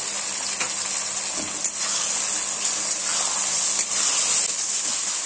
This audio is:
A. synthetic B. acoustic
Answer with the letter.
B